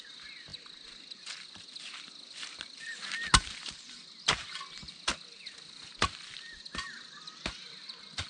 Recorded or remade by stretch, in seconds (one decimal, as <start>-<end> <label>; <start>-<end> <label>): 0.0-8.3 recorded